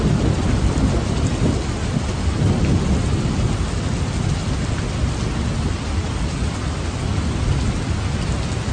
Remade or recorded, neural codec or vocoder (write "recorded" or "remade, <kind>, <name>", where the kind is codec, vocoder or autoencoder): recorded